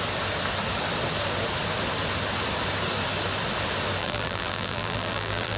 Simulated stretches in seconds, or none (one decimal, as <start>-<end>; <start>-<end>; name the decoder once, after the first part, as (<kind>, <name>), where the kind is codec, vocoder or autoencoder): 4.0-5.6 (vocoder, BigVGAN v2)